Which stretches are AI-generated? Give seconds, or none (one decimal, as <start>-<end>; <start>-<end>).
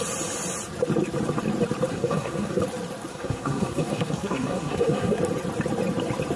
1.9-2.6; 3.1-5.2